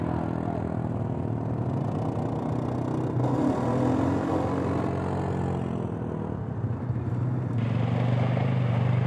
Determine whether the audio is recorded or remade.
recorded